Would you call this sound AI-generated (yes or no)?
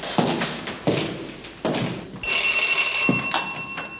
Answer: no